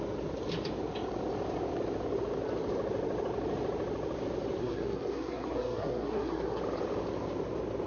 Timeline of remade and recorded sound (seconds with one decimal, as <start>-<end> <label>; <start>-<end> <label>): 0.0-4.6 recorded; 4.6-6.6 remade; 6.6-7.9 recorded